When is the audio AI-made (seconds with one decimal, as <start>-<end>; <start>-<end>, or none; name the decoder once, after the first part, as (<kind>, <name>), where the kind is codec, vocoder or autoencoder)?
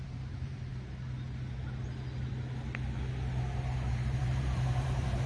0.0-0.7 (vocoder, BigVGAN v2); 3.9-5.3